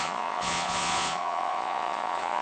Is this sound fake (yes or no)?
yes